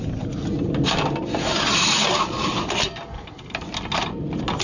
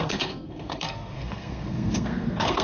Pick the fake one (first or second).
second